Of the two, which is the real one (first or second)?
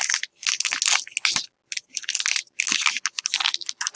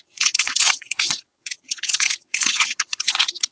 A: first